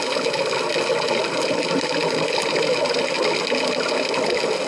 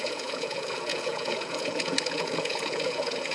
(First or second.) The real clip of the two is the first